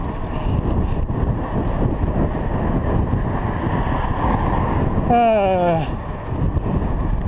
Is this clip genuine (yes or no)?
yes